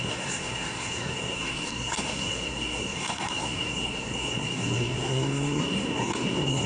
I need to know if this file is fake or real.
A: fake